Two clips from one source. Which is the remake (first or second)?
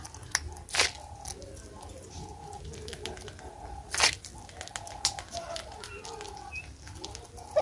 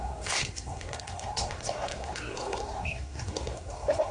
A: second